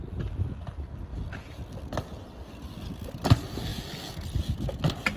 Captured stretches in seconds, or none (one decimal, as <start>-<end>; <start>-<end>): 0.0-5.2